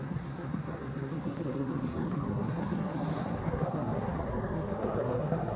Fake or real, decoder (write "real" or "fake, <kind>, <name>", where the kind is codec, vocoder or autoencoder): fake, codec, SNAC